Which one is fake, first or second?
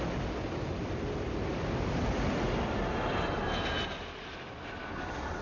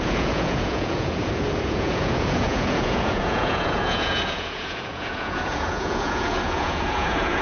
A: second